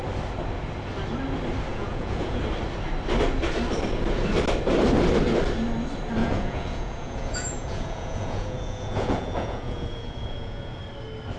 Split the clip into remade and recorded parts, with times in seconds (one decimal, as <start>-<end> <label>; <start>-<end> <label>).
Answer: 0.0-1.7 recorded; 1.7-2.4 remade; 2.4-6.2 recorded; 6.2-10.8 remade; 10.8-11.4 recorded